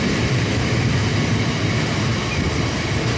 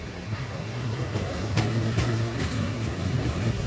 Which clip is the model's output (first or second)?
second